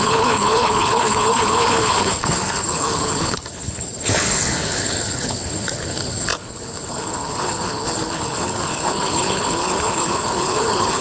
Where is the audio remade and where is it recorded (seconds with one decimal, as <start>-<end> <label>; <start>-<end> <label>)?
0.0-11.0 remade